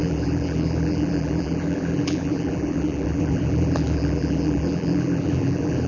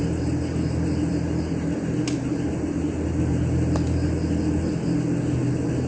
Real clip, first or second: second